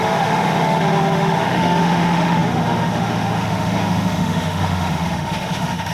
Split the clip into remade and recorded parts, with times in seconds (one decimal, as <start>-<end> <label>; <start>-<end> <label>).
0.0-5.9 remade

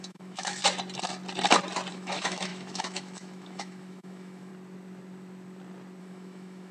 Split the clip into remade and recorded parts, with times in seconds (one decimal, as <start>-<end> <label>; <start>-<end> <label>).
0.0-0.6 remade; 0.6-1.9 recorded; 1.9-4.5 remade; 4.5-6.0 recorded; 6.0-6.7 remade

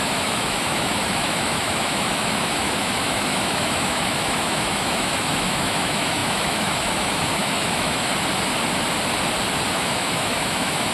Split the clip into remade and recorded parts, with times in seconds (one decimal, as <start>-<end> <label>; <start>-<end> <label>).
0.0-8.1 remade; 8.1-9.7 recorded; 9.7-10.9 remade

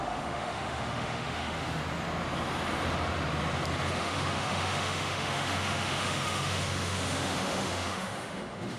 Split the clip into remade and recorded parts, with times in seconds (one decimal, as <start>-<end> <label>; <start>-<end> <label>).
0.0-1.8 remade; 1.8-4.0 recorded; 4.0-8.8 remade

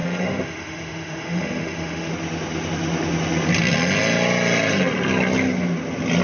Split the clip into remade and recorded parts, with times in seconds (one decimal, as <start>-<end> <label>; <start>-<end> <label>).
0.0-2.1 remade; 2.1-6.2 recorded

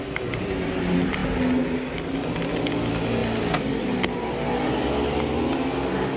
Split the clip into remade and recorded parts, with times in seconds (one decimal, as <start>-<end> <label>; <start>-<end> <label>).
0.0-6.2 recorded

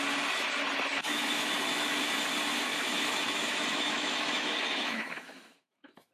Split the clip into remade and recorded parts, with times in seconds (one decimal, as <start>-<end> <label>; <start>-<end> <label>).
0.0-0.9 recorded; 0.9-1.5 remade; 1.5-2.7 recorded; 2.7-6.1 remade

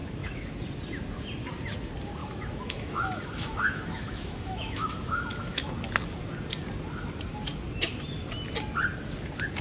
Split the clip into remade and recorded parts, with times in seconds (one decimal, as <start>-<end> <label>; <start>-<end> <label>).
0.0-0.5 remade; 0.5-2.2 recorded; 2.2-5.7 remade; 5.7-9.6 recorded